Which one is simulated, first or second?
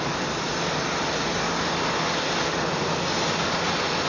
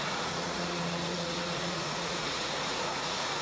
second